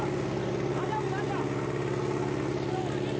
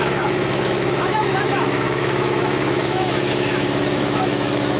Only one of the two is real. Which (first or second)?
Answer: first